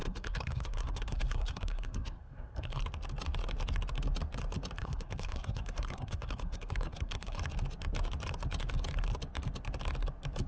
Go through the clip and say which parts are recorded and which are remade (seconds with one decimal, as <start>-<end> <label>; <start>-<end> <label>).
0.0-2.8 remade; 2.8-4.8 recorded; 4.8-7.4 remade; 7.4-10.5 recorded